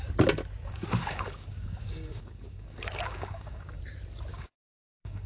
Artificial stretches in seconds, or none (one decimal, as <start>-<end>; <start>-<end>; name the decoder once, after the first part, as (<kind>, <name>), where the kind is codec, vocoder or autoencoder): 0.6-3.8 (codec, DAC); 4.3-5.3